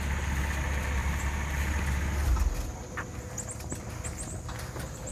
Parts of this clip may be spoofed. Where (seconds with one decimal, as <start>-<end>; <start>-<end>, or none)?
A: none